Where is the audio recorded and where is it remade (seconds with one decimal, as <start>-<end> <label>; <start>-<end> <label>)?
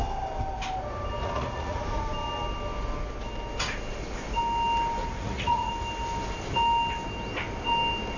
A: 0.0-1.2 recorded; 1.2-1.8 remade; 1.8-5.0 recorded; 5.0-5.7 remade; 5.7-8.2 recorded